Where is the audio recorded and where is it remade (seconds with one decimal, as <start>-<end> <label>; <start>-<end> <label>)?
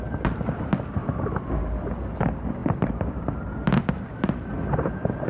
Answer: 0.0-1.0 recorded; 1.0-1.5 remade; 1.5-2.6 recorded; 2.6-5.3 remade